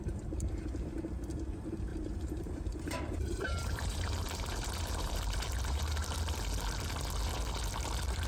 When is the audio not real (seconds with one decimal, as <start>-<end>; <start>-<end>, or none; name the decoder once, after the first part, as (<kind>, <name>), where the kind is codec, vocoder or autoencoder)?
1.9-5.9 (vocoder, BigVGAN v2)